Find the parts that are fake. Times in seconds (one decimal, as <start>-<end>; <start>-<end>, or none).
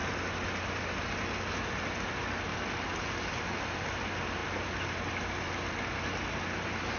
none